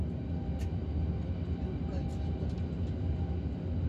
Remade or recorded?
recorded